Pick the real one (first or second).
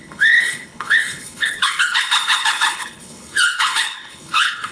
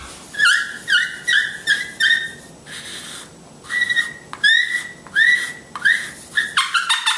second